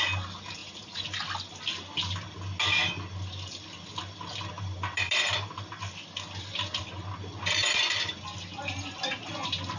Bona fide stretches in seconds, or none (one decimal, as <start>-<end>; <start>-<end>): 0.0-9.8